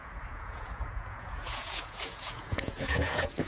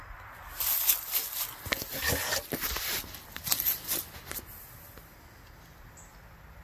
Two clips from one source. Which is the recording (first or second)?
second